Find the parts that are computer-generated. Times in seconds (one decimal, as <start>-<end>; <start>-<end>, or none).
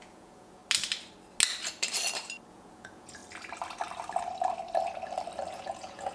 0.0-0.6; 2.5-3.2; 5.5-6.1